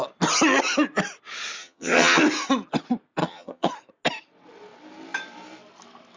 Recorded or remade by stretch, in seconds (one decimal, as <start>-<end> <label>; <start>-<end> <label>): 0.0-1.6 recorded; 1.6-2.2 remade; 2.2-3.2 recorded; 3.2-3.7 remade; 3.7-6.2 recorded